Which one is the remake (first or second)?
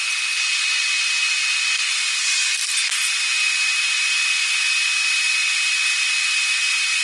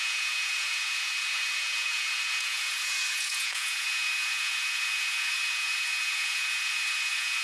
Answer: second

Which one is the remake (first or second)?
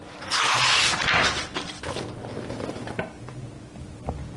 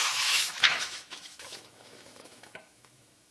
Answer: second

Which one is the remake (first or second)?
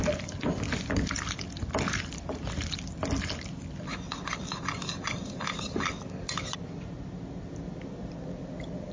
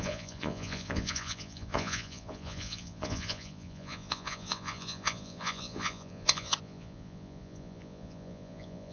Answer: second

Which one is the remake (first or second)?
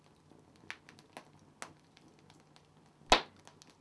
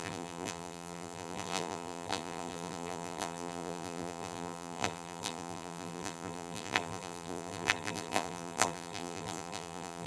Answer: second